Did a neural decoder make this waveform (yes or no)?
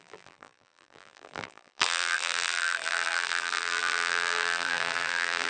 yes